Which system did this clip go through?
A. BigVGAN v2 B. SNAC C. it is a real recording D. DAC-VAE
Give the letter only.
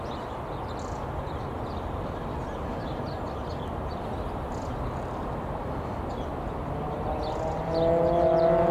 C